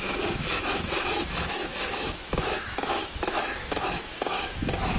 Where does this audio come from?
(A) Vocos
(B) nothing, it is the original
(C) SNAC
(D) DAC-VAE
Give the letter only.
D